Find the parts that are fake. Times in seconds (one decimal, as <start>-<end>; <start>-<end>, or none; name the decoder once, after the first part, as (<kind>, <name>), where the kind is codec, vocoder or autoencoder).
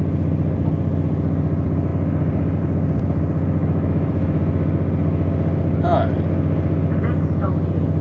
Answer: 3.6-4.4 (autoencoder, DAC-VAE)